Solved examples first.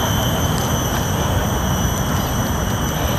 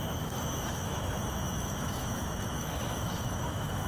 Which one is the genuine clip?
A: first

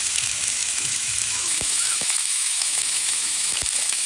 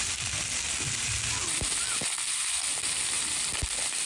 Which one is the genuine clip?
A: second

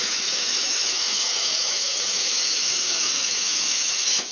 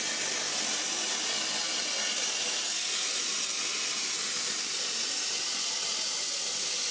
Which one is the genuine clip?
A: second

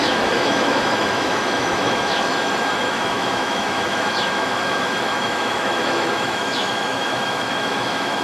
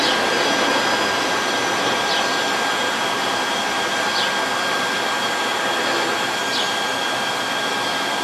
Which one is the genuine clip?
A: second